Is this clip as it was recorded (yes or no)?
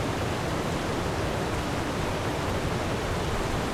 yes